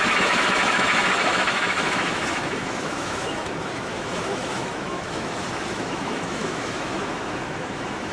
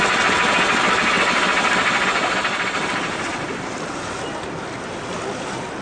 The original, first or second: second